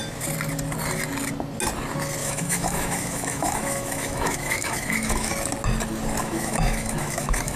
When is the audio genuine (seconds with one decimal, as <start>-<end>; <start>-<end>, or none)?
0.0-2.2; 5.3-6.2